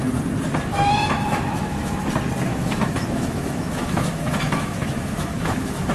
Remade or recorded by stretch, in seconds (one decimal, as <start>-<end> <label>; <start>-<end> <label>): 0.0-0.7 recorded; 0.7-2.0 remade; 2.0-2.5 recorded; 2.5-5.9 remade